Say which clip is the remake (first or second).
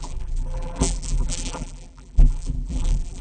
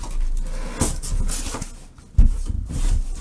first